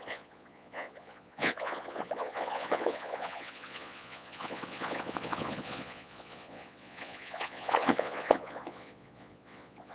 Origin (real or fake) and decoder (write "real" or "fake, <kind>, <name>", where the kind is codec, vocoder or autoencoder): fake, vocoder, Vocos